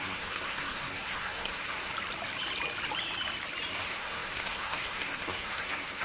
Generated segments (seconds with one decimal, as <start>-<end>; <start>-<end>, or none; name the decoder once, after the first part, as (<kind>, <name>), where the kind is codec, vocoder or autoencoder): 0.0-1.9 (codec, SNAC); 3.7-6.0